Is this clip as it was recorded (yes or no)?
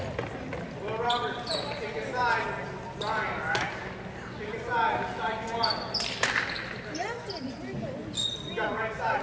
yes